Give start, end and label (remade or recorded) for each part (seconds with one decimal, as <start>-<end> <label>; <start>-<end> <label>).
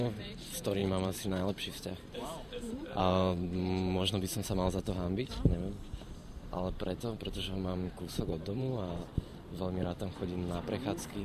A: 0.0-4.3 remade; 4.3-5.7 recorded; 5.7-9.1 remade; 9.1-11.2 recorded